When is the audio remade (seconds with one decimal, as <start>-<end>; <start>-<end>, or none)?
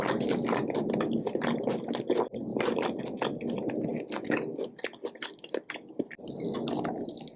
none